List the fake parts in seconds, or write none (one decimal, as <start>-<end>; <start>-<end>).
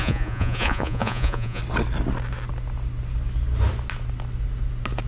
0.0-1.6